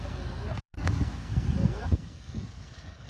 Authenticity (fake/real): fake